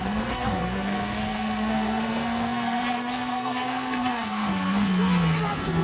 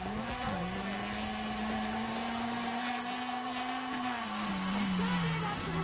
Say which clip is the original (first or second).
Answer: second